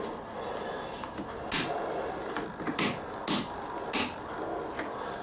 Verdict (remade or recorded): recorded